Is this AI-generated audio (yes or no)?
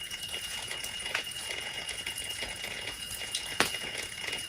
yes